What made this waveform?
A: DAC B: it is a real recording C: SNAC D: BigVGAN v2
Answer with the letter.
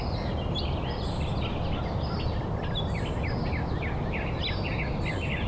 B